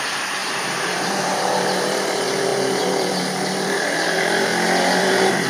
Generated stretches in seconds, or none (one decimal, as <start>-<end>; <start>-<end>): 0.0-4.5; 5.0-5.5